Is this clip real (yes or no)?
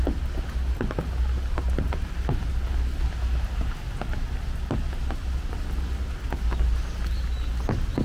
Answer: yes